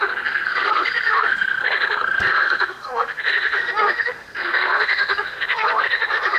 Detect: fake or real fake